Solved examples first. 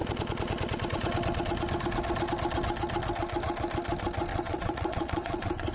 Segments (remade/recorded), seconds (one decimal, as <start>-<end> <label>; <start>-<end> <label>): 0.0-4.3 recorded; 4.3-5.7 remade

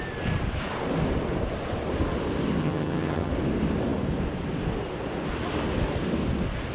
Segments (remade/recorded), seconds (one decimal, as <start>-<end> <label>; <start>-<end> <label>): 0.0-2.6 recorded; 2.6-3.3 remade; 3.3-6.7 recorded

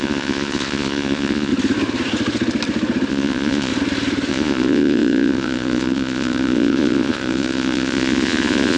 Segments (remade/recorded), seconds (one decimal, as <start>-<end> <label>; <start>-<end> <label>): 0.0-1.5 remade; 1.5-3.1 recorded; 3.1-3.7 remade; 3.7-4.3 recorded; 4.3-8.8 remade

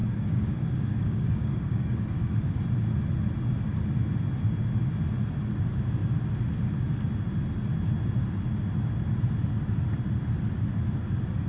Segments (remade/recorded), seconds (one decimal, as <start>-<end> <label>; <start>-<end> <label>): 0.0-2.6 remade; 2.6-11.5 recorded